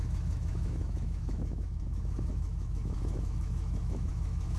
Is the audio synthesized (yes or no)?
yes